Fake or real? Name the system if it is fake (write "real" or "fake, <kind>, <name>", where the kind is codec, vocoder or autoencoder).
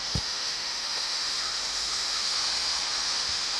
fake, autoencoder, DAC-VAE